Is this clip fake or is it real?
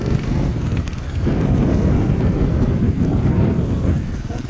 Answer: fake